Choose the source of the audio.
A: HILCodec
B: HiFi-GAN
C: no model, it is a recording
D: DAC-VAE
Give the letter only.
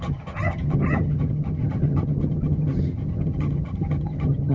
B